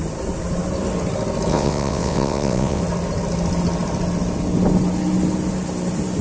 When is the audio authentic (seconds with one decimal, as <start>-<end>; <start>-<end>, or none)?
0.0-1.5; 2.8-6.2